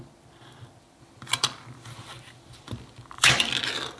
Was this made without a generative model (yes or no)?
no